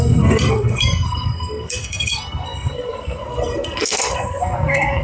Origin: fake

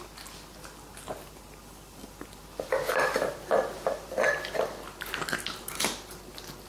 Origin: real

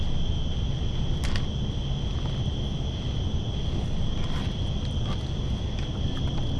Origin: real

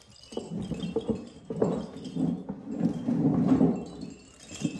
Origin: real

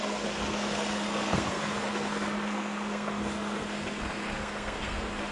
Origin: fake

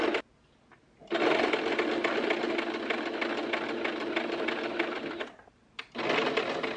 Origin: real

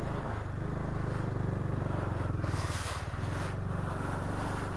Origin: real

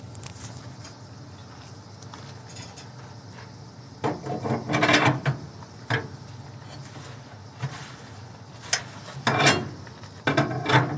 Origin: real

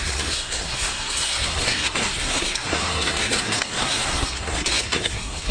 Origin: fake